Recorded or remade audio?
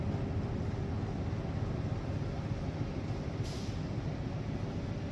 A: recorded